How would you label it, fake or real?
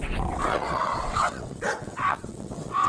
fake